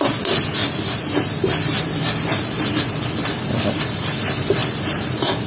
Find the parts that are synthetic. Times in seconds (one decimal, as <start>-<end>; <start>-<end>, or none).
none